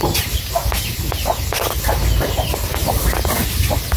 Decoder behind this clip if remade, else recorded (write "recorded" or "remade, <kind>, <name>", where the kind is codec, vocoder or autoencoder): recorded